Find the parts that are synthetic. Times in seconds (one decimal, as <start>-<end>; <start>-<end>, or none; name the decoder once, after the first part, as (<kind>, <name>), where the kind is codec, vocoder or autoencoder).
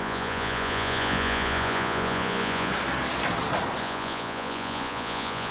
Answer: 0.0-2.7 (vocoder, Vocos); 3.8-5.5